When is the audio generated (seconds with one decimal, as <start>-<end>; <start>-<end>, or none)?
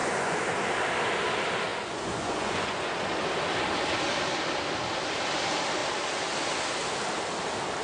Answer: 0.0-0.5; 1.7-2.9